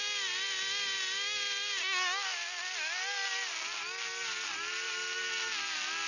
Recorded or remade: recorded